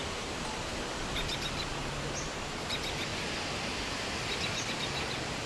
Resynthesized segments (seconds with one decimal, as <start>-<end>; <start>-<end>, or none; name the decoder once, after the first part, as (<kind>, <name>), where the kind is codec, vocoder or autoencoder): 0.0-1.8 (vocoder, BigVGAN v2); 2.5-5.5